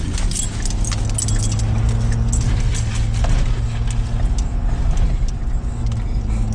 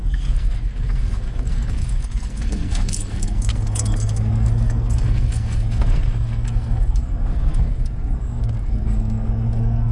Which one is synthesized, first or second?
second